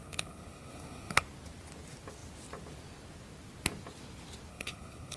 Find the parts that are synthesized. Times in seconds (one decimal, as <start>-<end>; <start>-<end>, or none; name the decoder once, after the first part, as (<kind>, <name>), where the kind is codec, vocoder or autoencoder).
0.0-1.2 (codec, HILCodec); 4.5-5.2